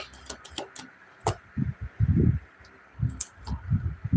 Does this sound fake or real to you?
real